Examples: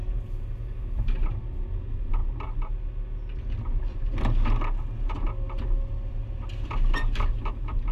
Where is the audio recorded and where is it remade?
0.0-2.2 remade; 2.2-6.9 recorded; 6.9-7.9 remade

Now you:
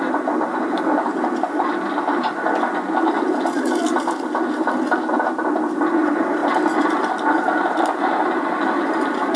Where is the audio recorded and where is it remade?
0.0-9.4 remade

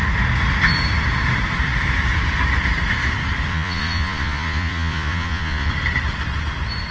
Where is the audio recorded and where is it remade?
0.0-3.5 recorded; 3.5-5.7 remade; 5.7-6.9 recorded

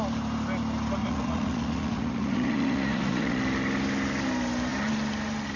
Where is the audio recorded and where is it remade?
0.0-1.0 recorded; 1.0-3.4 remade; 3.4-5.6 recorded